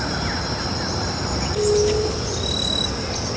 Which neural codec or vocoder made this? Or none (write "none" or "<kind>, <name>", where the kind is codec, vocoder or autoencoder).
none